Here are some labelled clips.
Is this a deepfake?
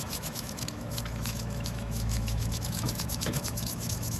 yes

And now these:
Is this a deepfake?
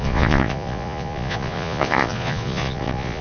yes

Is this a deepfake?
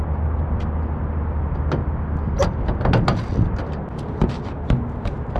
no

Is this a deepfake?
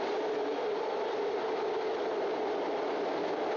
no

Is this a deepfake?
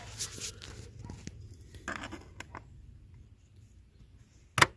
no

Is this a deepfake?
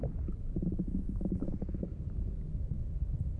no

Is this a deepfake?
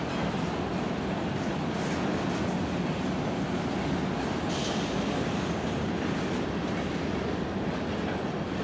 no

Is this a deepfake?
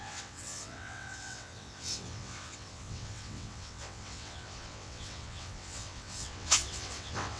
yes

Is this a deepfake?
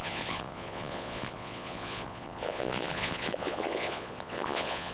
yes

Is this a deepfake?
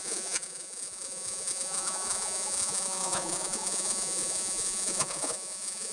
yes